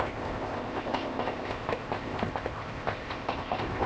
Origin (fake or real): fake